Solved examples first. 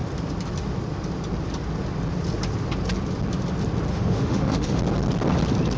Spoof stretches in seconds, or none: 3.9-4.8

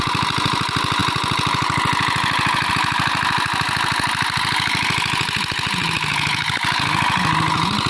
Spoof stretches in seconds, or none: none